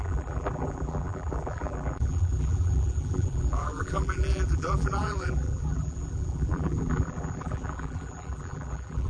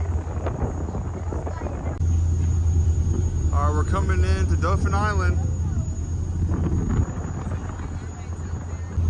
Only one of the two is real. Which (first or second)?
second